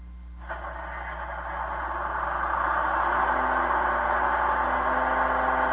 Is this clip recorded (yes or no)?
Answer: yes